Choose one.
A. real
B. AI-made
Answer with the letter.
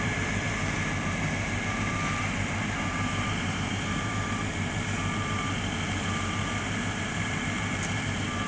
B